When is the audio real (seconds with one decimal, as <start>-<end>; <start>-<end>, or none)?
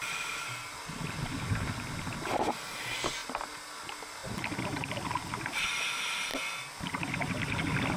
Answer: 0.0-8.0